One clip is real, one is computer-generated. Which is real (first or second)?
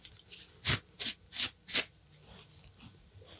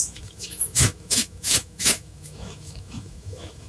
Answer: first